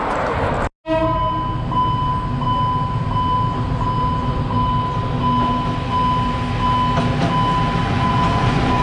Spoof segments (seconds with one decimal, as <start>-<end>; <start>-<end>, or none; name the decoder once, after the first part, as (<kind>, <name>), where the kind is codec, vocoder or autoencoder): 7.8-8.8 (vocoder, Vocos)